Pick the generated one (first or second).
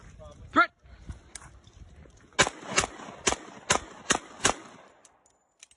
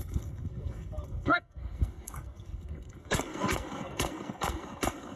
second